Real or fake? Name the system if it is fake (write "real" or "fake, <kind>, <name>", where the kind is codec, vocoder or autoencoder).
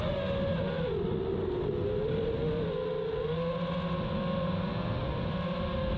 real